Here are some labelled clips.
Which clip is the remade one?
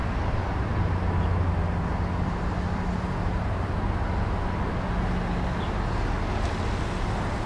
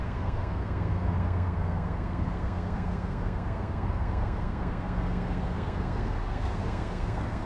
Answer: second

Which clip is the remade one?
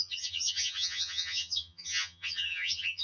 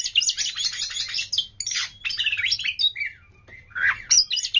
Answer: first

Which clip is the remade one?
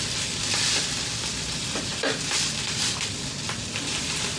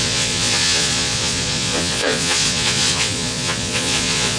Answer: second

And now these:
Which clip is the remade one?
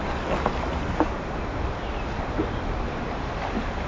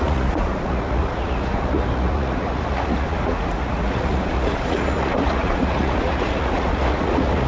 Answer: second